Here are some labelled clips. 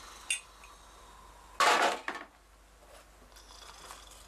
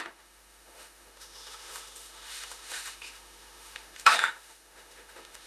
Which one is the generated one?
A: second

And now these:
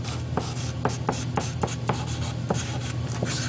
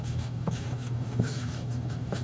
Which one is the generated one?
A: second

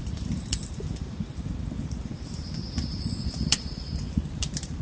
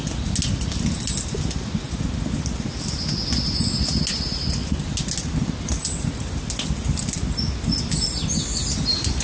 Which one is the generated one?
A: first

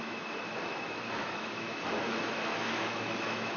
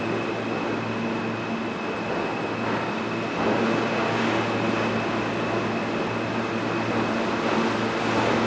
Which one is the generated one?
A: first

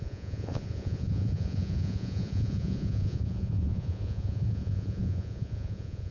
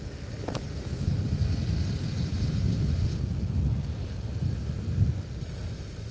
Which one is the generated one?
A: first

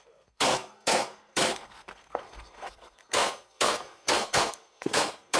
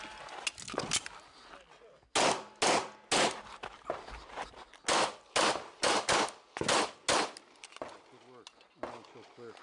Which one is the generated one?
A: first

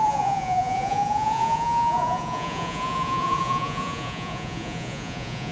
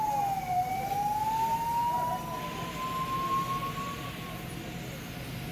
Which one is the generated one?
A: first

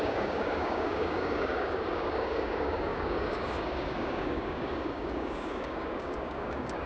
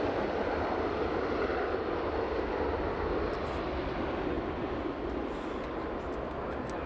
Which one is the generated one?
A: first